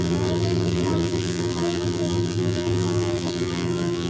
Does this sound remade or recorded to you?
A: remade